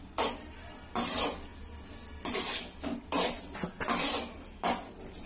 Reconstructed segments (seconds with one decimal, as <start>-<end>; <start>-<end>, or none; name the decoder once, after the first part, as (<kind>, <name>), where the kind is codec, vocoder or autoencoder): none